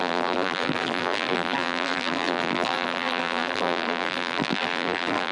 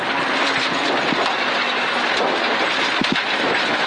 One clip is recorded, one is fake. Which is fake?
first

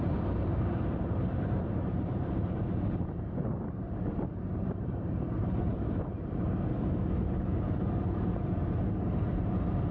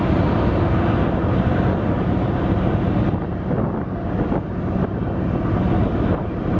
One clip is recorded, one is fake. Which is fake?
first